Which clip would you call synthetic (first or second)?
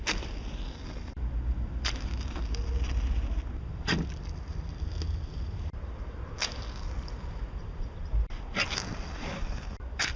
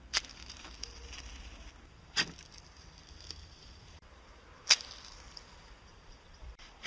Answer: second